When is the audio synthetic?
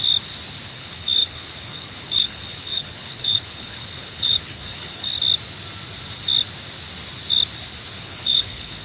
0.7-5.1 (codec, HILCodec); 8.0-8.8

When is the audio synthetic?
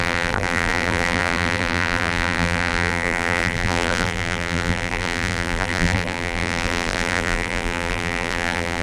0.0-8.8 (vocoder, BigVGAN v2)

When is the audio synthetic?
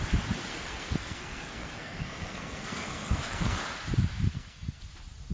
0.5-3.6 (codec, SNAC); 4.3-4.8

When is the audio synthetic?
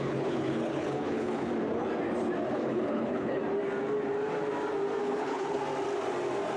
0.0-1.5 (codec, HILCodec); 2.5-3.4; 5.0-5.6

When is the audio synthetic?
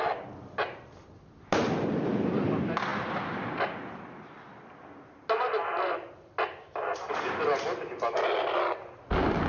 none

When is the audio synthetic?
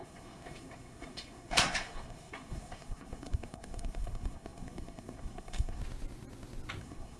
0.0-5.8 (codec, SNAC); 6.8-7.2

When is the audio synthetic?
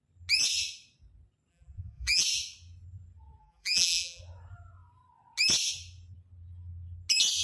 1.5-2.2 (vocoder, BigVGAN v2); 3.4-4.2